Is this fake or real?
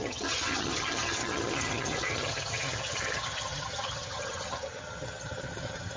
fake